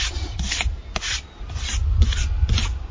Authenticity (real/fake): real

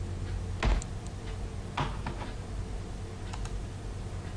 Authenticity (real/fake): real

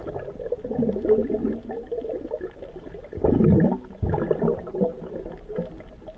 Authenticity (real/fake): real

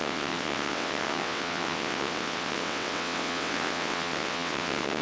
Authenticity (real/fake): fake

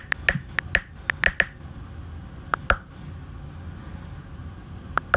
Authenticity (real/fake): real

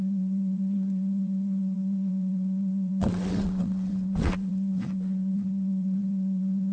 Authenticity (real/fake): fake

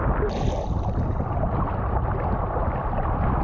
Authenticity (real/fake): real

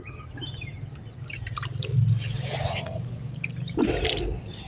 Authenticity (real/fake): real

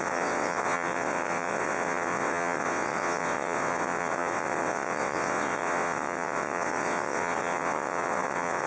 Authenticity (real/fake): fake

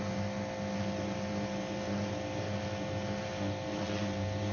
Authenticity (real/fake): real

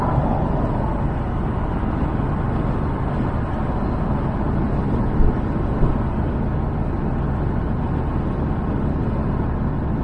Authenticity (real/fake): real